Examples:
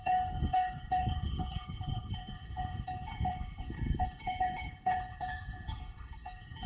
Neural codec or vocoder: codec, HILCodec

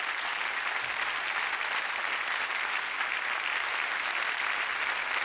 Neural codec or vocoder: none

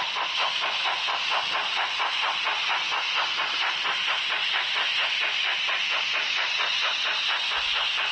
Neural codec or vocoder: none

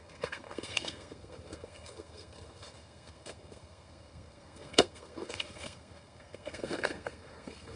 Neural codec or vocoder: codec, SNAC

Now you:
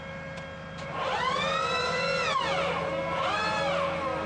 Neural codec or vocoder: none